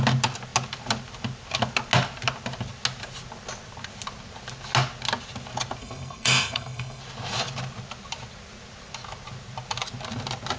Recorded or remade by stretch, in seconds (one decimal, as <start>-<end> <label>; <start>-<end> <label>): 0.0-5.8 recorded; 5.8-7.0 remade; 7.0-10.6 recorded